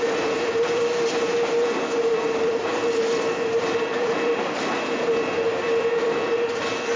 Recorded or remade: remade